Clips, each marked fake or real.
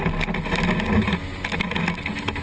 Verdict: real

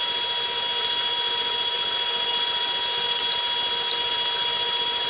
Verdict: real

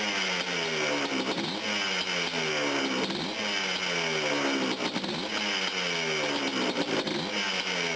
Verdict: real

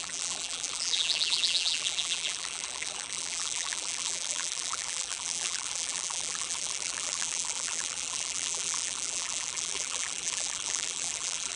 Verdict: fake